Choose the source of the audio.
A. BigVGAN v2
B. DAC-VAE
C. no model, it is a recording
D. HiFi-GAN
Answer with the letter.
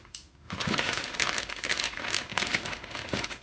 B